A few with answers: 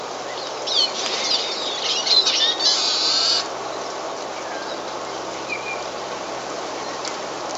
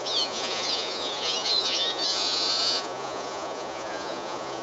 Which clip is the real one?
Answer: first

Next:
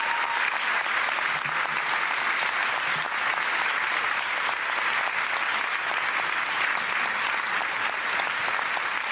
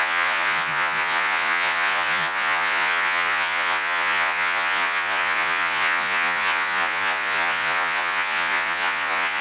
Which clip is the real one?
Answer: first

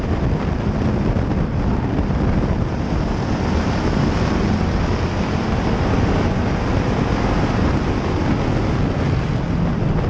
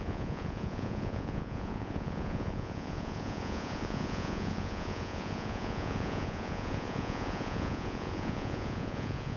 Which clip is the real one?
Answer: first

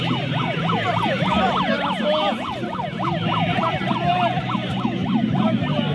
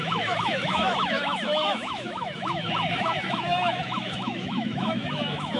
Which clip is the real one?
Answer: first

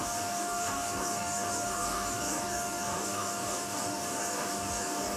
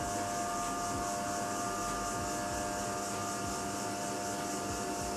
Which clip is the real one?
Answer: second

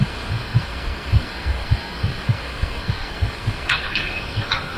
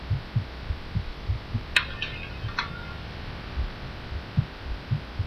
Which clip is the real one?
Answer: second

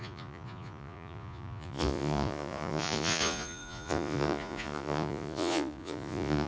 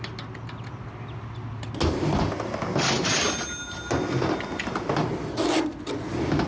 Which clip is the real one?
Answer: second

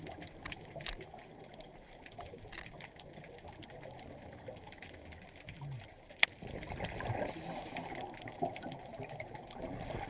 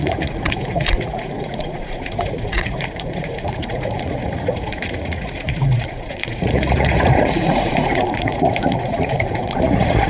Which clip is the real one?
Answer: first